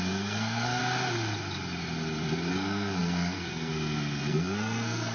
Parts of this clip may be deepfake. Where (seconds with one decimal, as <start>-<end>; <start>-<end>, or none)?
0.0-0.8; 2.5-5.1

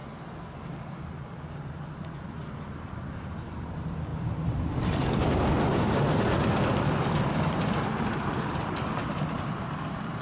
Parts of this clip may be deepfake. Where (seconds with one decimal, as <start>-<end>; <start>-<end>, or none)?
1.2-10.2

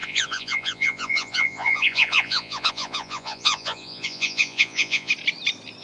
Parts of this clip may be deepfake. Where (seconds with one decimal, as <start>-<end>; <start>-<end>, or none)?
0.0-5.1